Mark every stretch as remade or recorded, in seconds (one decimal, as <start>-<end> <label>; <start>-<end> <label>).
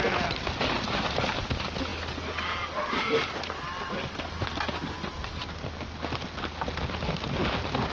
0.0-7.9 recorded